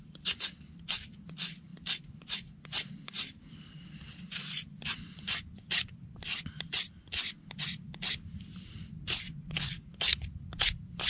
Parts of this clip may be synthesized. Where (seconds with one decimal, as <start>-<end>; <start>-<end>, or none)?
1.7-5.4